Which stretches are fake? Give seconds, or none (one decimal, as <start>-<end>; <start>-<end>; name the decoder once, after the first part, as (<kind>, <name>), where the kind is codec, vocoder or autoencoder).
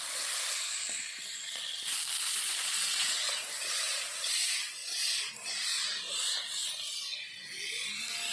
2.2-3.8 (vocoder, Vocos)